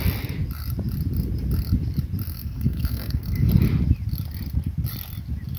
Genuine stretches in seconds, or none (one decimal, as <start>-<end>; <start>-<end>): 0.0-2.3; 3.5-5.6